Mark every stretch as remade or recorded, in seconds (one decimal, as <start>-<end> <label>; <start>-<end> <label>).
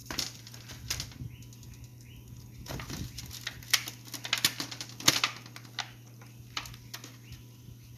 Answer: 0.0-0.7 remade; 0.7-8.0 recorded